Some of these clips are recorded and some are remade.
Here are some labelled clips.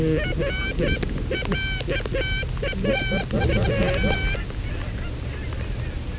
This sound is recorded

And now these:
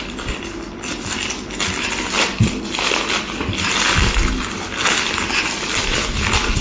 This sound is recorded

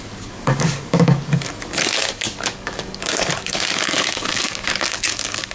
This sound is remade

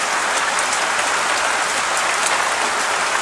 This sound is recorded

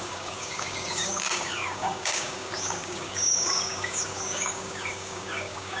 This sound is remade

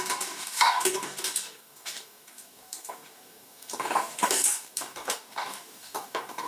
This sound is remade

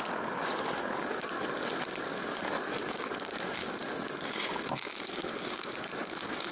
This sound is remade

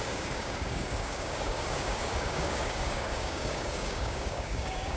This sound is remade